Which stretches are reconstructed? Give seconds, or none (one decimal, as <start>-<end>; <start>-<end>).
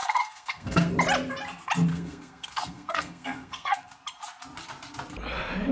0.0-0.9; 1.9-3.9